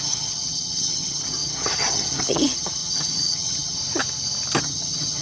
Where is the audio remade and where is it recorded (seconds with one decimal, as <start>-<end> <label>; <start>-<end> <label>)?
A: 0.0-3.8 remade; 3.8-4.6 recorded; 4.6-5.2 remade